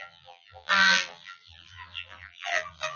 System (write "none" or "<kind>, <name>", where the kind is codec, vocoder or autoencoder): vocoder, BigVGAN v2